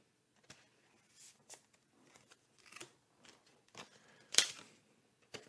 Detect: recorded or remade remade